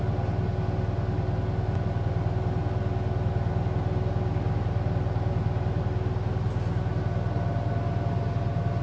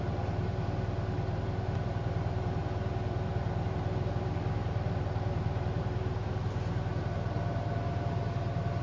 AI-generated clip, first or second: second